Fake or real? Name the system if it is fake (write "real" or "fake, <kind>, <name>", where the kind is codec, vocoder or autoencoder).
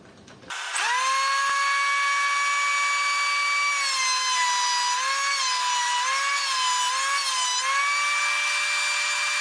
real